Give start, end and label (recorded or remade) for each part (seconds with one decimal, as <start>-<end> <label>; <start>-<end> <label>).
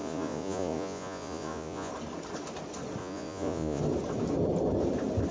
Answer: 0.0-1.9 remade; 1.9-3.0 recorded; 3.0-3.8 remade; 3.8-5.3 recorded